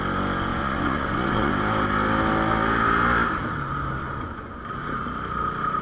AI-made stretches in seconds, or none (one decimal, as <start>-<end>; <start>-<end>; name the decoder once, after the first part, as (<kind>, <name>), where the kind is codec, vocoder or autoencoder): 0.5-1.5 (vocoder, Vocos); 4.0-4.6